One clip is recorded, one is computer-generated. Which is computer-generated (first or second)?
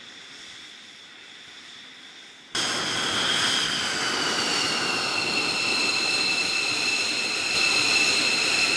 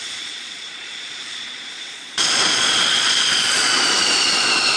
second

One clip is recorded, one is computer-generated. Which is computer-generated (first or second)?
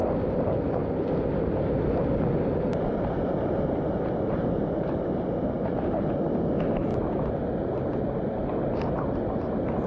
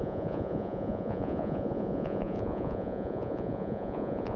second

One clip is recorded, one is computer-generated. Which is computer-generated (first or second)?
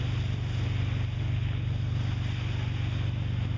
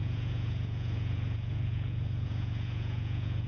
second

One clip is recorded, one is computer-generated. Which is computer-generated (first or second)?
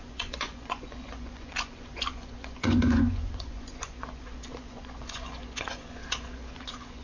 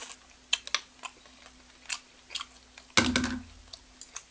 first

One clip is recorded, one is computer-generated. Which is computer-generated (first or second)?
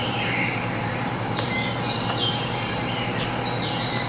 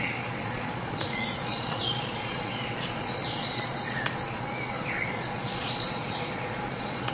second